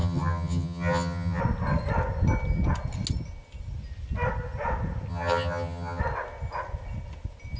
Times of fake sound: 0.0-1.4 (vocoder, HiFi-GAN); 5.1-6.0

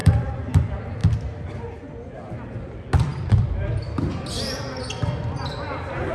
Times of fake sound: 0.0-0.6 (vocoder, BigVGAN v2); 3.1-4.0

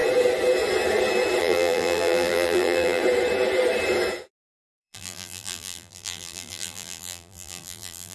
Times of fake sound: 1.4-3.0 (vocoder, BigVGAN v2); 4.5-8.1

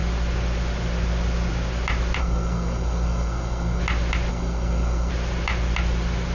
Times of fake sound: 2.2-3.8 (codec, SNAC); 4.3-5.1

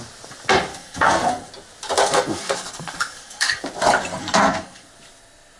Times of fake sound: 0.7-1.5 (codec, SNAC); 2.0-3.6; 4.2-4.9

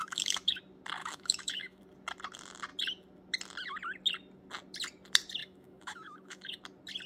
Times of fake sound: 0.0-0.6 (autoencoder, DAC-VAE); 1.0-1.8; 5.4-6.6

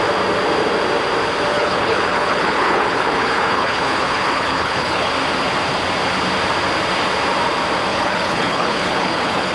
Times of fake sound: 1.5-5.1 (codec, HILCodec); 7.9-9.5

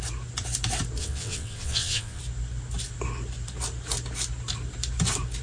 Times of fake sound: 1.0-2.2 (vocoder, WaveNeXt)